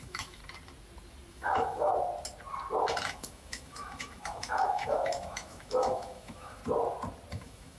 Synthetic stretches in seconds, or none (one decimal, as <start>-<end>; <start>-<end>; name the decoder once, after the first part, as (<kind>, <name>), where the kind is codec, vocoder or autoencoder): 0.0-0.4 (autoencoder, DAC-VAE); 1.3-1.9; 3.0-6.6; 7.3-7.8